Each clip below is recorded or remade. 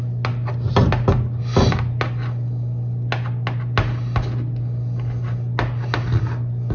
recorded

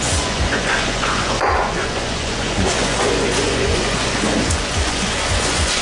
remade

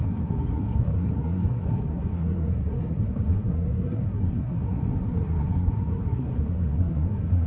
remade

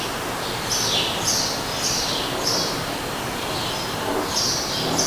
recorded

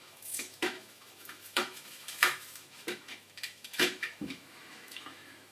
remade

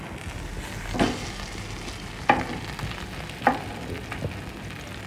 recorded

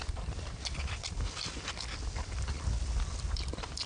recorded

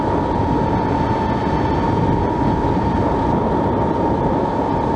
recorded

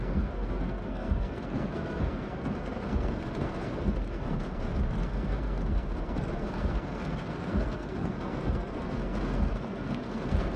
remade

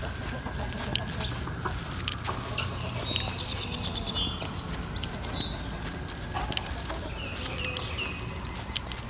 recorded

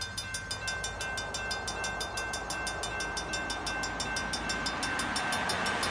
recorded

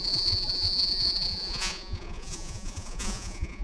remade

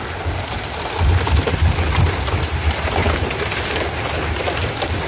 recorded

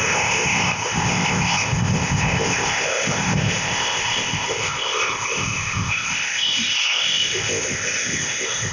remade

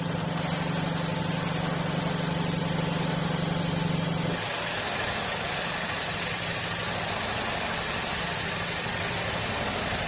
recorded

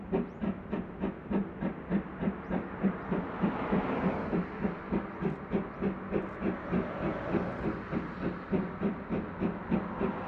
recorded